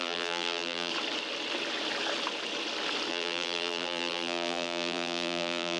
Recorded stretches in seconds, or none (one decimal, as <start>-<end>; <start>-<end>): 0.9-3.1